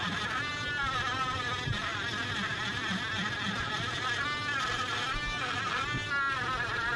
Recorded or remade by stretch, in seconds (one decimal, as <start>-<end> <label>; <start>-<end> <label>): 0.0-7.0 recorded